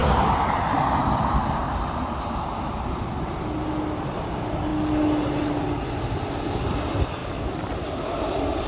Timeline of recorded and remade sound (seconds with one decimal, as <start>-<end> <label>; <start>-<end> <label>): 0.0-1.4 recorded; 1.4-2.1 remade; 2.1-7.2 recorded; 7.2-7.8 remade; 7.8-8.7 recorded